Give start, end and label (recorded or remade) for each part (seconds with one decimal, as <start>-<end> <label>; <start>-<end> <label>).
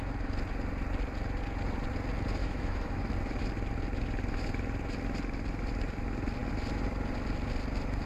0.0-2.4 recorded; 2.4-3.0 remade; 3.0-8.1 recorded